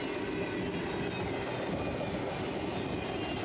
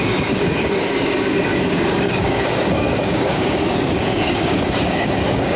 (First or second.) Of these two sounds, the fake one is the second